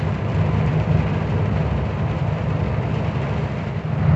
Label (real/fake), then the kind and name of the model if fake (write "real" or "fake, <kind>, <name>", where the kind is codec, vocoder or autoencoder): real